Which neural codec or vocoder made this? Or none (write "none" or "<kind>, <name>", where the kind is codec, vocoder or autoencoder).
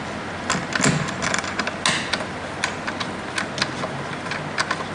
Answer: none